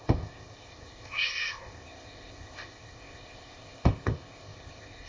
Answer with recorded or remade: remade